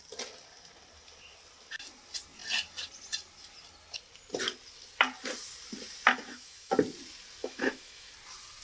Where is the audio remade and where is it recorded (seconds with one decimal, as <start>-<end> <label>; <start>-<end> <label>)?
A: 0.0-6.1 recorded; 6.1-6.7 remade; 6.7-7.4 recorded; 7.4-8.1 remade; 8.1-8.6 recorded